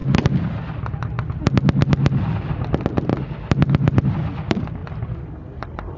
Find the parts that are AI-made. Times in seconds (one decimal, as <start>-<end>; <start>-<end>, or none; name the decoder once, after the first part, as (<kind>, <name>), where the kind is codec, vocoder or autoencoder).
none